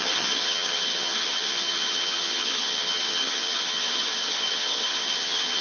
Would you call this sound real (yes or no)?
no